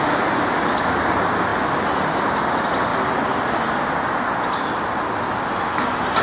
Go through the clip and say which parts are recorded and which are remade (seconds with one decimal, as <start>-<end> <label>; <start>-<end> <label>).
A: 0.0-6.2 recorded